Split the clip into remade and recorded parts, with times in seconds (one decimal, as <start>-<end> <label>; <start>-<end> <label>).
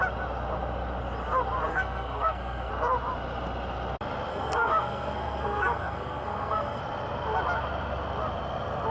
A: 0.0-1.7 recorded; 1.7-2.7 remade; 2.7-4.3 recorded; 4.3-6.8 remade; 6.8-8.9 recorded